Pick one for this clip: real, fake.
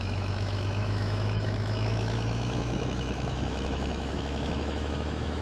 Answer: fake